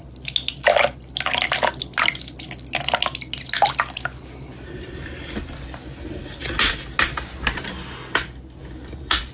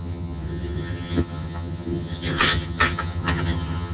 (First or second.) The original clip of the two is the first